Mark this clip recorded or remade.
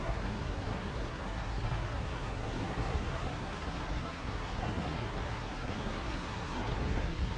remade